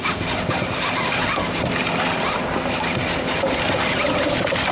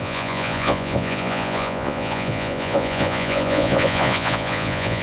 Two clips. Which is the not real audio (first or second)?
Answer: second